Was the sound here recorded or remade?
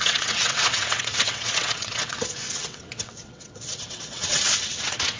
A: remade